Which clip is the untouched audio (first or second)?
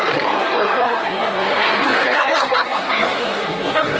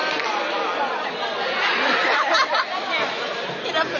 second